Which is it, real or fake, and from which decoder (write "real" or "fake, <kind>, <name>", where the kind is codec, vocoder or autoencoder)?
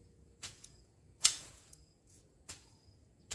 fake, vocoder, Vocos